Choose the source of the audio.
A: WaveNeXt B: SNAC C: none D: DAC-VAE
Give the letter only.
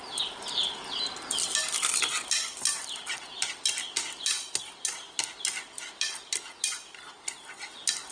C